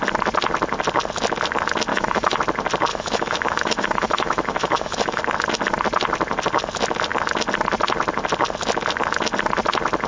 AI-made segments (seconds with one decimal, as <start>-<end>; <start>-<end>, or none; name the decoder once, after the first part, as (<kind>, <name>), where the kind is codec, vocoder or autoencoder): 1.9-2.4 (autoencoder, DAC-VAE); 2.9-5.2